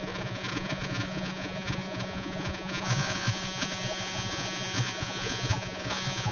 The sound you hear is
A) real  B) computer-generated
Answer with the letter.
B